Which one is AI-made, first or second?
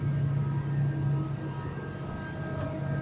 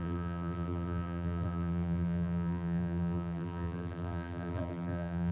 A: second